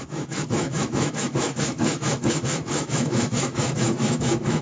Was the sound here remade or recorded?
remade